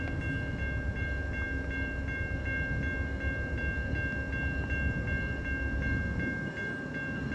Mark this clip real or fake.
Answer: real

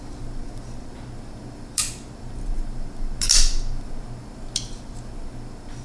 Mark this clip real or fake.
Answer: real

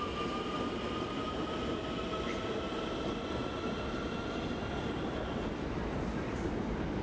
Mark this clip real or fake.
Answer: real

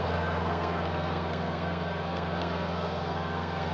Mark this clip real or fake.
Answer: fake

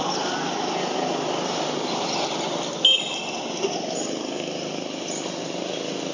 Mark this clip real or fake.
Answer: real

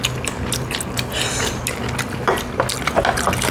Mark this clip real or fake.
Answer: real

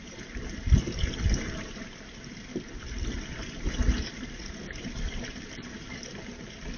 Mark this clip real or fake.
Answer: real